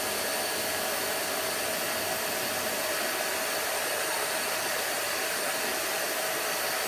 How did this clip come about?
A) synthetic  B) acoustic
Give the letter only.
B